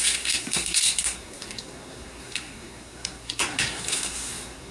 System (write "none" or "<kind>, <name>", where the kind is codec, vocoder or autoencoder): codec, SNAC